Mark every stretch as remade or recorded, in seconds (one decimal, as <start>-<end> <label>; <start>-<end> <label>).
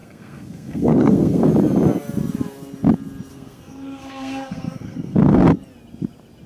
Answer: 0.0-1.5 remade; 1.5-3.3 recorded; 3.3-5.4 remade; 5.4-6.5 recorded